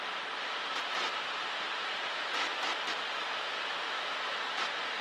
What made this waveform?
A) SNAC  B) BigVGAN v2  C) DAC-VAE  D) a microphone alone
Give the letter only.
D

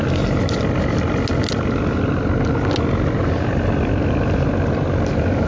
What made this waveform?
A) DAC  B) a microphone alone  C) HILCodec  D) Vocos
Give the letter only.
B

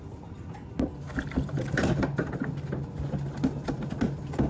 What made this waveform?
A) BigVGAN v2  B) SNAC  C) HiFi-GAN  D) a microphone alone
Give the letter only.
D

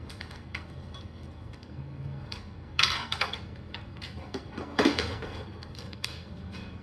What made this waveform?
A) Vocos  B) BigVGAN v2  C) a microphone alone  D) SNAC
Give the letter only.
D